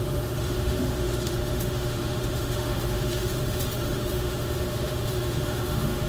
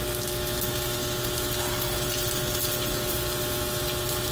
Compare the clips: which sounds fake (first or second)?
first